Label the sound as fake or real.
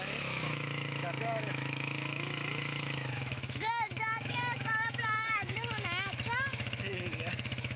fake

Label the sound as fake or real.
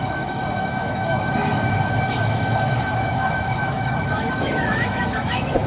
fake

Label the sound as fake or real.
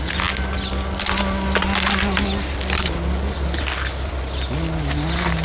real